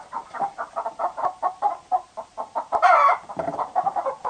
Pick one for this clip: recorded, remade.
remade